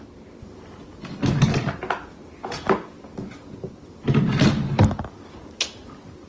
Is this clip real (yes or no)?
yes